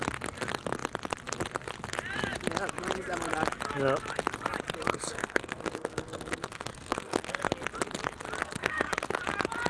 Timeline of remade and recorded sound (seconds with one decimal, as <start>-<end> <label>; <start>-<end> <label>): 0.0-4.9 recorded; 4.9-7.4 remade; 7.4-8.4 recorded; 8.4-8.9 remade; 8.9-9.7 recorded